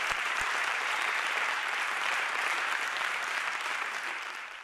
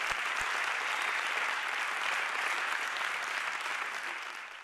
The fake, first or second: first